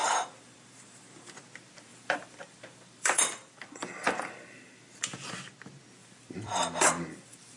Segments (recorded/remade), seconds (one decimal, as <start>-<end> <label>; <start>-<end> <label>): 0.0-1.4 remade; 1.4-1.9 recorded; 1.9-5.3 remade; 5.3-6.0 recorded; 6.0-7.6 remade